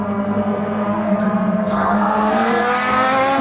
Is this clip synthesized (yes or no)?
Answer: yes